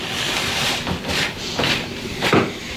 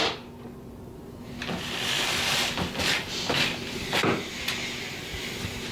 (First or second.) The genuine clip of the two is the second